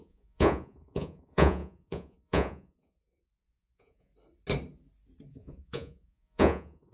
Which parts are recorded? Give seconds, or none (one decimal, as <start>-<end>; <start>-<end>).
4.1-5.3